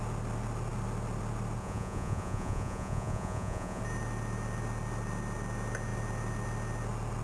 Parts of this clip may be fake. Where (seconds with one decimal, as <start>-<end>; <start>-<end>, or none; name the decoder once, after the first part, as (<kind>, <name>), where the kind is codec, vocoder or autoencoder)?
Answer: 1.6-3.8 (vocoder, Vocos)